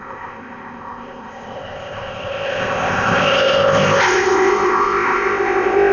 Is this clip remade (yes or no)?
yes